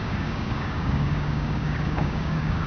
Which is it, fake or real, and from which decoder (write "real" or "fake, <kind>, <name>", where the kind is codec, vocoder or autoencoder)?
fake, codec, DAC